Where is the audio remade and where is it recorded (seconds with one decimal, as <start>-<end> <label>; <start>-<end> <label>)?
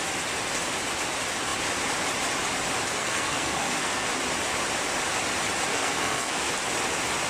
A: 0.0-3.0 recorded; 3.0-4.1 remade; 4.1-5.7 recorded; 5.7-6.5 remade; 6.5-7.3 recorded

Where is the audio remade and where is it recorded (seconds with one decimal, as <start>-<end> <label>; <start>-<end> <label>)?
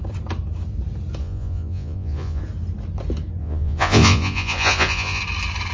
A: 0.0-1.2 recorded; 1.2-2.4 remade; 2.4-3.4 recorded; 3.4-5.2 remade; 5.2-5.7 recorded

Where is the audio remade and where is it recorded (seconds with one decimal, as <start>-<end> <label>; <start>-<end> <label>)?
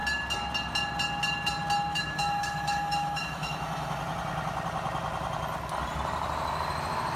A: 0.0-1.9 recorded; 1.9-4.0 remade; 4.0-7.2 recorded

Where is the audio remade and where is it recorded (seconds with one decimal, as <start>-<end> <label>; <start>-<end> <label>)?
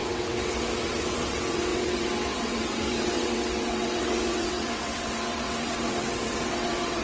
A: 0.0-7.0 remade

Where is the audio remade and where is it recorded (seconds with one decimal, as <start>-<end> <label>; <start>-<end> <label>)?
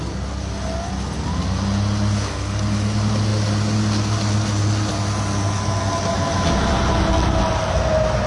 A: 0.0-8.3 recorded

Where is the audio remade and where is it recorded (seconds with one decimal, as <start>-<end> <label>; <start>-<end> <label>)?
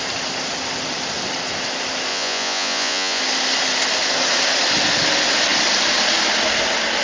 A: 0.0-2.1 recorded; 2.1-3.2 remade; 3.2-7.0 recorded